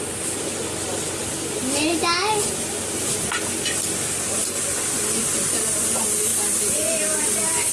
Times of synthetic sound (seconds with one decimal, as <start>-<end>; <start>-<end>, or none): none